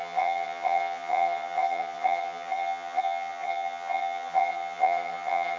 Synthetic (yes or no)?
yes